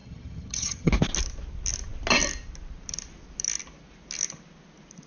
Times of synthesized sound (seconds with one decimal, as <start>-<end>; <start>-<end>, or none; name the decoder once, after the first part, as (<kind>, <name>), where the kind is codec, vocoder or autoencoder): 0.0-0.9 (vocoder, HiFi-GAN)